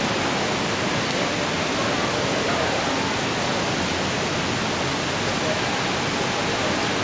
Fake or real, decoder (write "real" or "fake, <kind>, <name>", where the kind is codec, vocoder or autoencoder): real